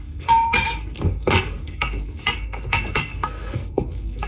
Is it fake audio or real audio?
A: fake